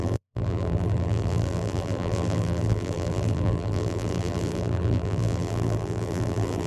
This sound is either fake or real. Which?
fake